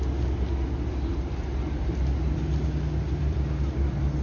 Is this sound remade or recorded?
recorded